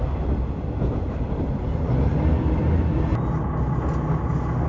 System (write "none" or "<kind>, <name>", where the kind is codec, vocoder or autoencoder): none